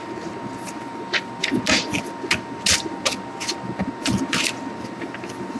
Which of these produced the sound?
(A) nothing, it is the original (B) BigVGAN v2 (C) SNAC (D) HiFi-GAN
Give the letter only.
A